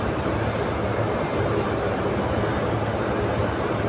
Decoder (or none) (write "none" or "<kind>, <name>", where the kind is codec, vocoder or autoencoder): none